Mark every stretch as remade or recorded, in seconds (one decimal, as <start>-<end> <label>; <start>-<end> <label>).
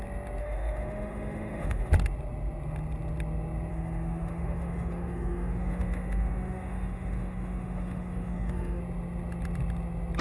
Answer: 0.0-0.4 recorded; 0.4-1.9 remade; 1.9-3.7 recorded; 3.7-8.8 remade; 8.8-10.2 recorded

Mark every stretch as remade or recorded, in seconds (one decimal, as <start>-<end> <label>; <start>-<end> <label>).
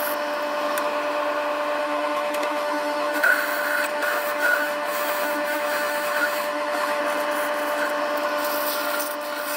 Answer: 0.0-1.8 recorded; 1.8-3.3 remade; 3.3-3.9 recorded; 3.9-7.0 remade; 7.0-9.6 recorded